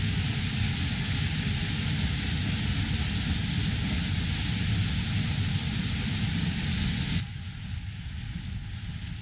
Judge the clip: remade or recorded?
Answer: recorded